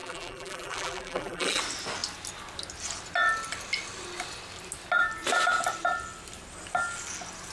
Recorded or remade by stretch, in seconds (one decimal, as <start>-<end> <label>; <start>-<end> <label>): 0.0-1.6 remade; 1.6-7.5 recorded